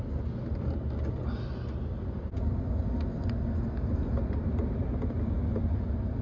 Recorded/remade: recorded